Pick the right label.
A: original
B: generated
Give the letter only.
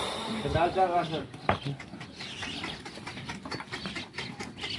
A